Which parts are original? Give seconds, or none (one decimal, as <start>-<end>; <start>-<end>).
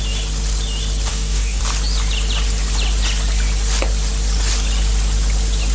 0.0-1.1; 1.6-5.7